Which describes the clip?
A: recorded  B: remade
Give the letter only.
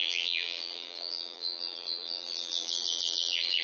B